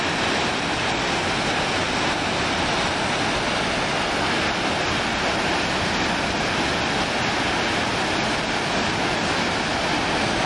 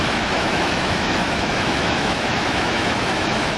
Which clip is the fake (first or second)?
second